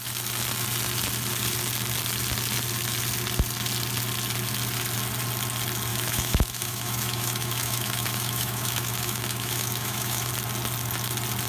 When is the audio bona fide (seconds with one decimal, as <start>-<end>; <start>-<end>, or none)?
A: 0.0-5.9; 10.3-11.5